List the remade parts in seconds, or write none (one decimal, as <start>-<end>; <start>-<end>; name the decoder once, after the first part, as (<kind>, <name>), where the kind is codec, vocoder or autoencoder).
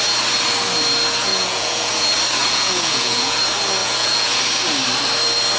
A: 1.3-1.9 (vocoder, Vocos); 2.4-3.4; 3.8-4.4